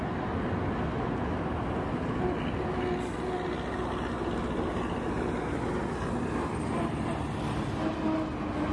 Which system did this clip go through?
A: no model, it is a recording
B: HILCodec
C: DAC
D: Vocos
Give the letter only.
A